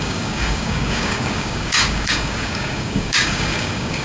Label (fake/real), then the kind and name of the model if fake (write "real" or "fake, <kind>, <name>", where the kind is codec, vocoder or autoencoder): fake, codec, DAC